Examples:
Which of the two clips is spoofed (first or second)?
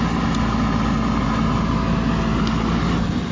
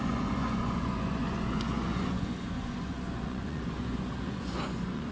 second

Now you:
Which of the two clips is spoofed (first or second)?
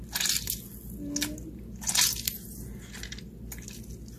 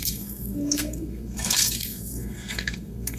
second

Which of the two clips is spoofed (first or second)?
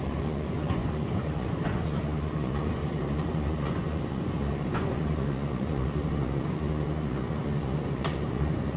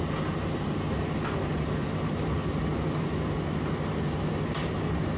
first